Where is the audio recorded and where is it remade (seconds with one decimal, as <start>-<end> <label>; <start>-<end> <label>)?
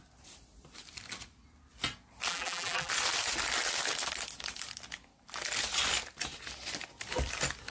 0.0-2.3 recorded; 2.3-2.9 remade; 2.9-7.7 recorded